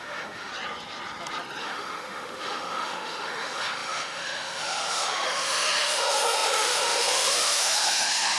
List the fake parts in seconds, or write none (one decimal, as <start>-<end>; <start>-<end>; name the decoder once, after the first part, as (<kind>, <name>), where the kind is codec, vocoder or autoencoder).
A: 0.0-0.5 (autoencoder, DAC-VAE); 1.6-8.4